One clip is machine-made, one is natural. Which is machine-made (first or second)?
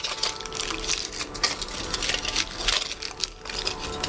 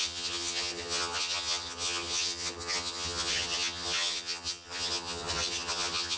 second